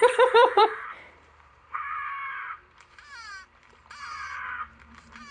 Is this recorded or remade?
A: remade